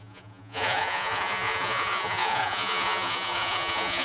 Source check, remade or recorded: remade